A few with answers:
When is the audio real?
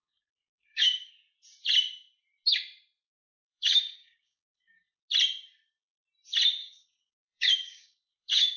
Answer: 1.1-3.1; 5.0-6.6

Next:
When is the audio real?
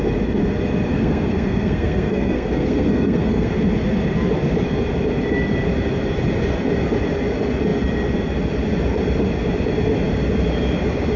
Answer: 0.0-0.9; 3.5-11.2